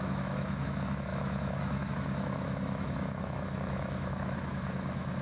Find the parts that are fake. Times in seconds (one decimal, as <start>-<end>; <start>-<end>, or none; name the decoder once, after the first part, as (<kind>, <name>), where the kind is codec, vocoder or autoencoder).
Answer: 0.0-5.2 (autoencoder, DAC-VAE)